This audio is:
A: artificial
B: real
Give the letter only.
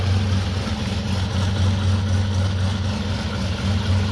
B